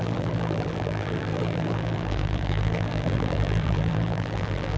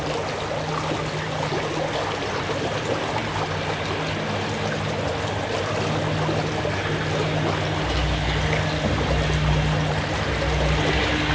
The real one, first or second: second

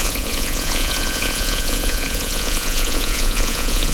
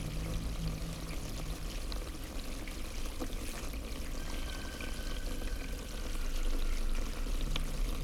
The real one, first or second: second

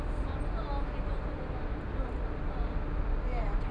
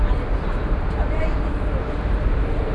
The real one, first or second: first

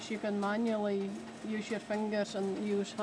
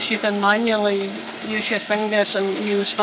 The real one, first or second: first